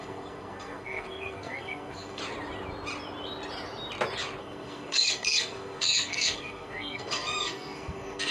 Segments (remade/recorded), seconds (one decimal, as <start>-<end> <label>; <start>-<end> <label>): 0.0-2.2 remade; 2.2-4.4 recorded; 4.4-8.3 remade